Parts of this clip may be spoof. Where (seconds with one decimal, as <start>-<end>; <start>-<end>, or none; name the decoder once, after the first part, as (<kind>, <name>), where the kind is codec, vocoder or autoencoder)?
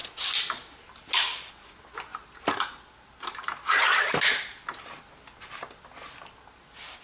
none